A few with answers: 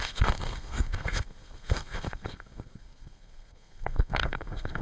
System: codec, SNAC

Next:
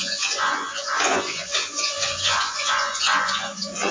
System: vocoder, Vocos